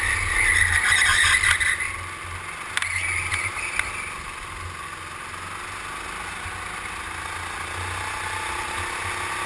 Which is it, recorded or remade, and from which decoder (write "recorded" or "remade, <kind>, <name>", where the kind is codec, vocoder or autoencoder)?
recorded